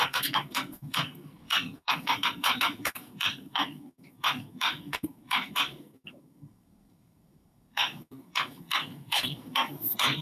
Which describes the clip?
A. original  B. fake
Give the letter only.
B